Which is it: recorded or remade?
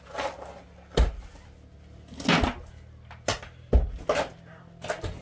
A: recorded